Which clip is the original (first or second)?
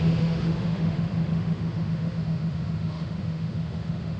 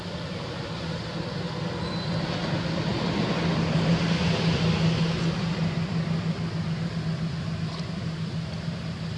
second